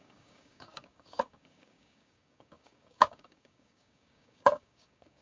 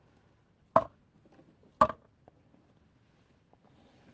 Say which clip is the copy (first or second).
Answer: first